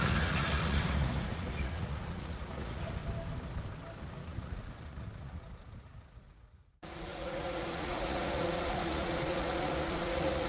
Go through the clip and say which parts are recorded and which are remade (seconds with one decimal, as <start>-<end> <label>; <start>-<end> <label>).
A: 0.0-3.0 remade; 3.0-4.0 recorded; 4.0-10.5 remade